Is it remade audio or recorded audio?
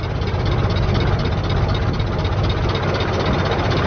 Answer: recorded